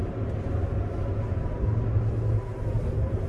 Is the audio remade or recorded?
recorded